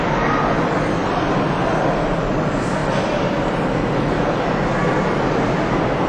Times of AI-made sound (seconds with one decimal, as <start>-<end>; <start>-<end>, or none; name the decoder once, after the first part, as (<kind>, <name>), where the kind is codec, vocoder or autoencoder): none